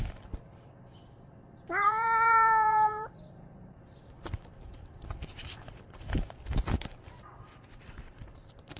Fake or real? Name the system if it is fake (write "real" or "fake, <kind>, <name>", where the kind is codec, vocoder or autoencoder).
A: fake, vocoder, BigVGAN v2